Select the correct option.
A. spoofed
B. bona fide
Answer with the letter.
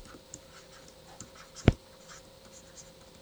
B